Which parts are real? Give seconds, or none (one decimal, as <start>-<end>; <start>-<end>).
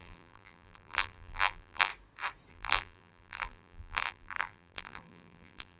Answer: 1.9-2.5